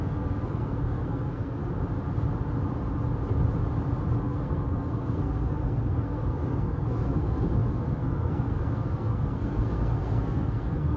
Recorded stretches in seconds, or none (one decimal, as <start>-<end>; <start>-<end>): 1.6-4.2